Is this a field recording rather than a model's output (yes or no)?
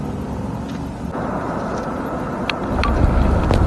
yes